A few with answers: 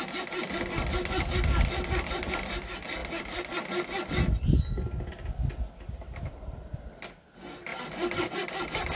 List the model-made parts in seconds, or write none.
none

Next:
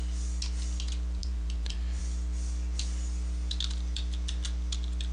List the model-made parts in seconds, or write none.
1.2-2.0 (vocoder, BigVGAN v2)

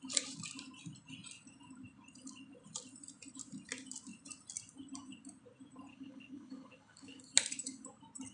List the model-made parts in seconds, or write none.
5.9-7.2 (codec, HILCodec)

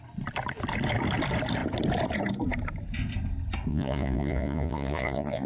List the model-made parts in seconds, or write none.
3.7-5.5 (vocoder, Vocos)